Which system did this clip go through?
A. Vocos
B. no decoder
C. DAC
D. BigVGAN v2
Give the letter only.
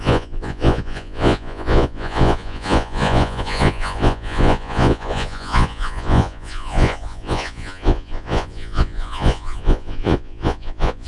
A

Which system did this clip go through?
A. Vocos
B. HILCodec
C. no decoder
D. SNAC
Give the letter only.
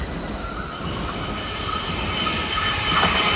C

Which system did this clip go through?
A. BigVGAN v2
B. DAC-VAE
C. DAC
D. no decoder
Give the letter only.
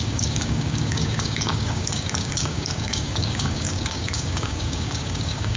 C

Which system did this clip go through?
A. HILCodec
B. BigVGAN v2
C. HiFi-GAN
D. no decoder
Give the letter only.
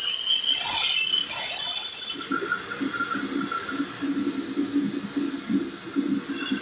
D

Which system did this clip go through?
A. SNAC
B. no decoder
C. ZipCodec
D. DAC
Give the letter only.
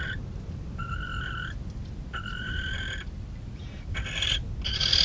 B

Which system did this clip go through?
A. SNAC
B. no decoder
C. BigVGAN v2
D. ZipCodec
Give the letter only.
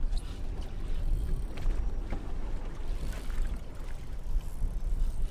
B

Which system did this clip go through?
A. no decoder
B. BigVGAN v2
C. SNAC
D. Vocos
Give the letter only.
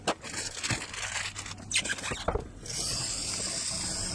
A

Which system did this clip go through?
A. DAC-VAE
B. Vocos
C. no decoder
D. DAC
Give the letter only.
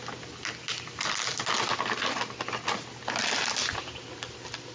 C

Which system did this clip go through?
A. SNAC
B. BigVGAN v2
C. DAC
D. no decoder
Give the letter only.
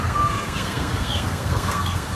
A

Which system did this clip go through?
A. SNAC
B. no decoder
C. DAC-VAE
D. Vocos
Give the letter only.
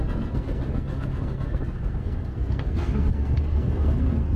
A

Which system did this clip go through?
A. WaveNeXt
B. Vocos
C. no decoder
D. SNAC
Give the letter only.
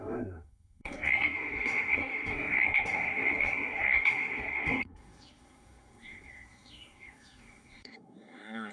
D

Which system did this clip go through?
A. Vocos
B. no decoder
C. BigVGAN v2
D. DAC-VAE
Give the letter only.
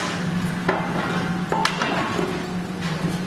B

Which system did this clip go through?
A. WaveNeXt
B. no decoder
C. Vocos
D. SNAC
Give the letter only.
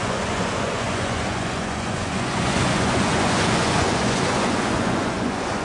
C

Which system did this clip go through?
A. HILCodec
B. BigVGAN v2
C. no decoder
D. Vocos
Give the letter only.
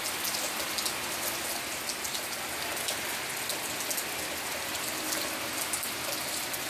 C